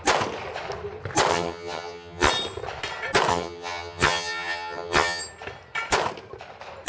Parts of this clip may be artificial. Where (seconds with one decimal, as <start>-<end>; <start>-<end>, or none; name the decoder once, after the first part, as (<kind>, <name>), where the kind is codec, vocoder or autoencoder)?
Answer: 1.3-2.3 (vocoder, HiFi-GAN); 3.3-5.2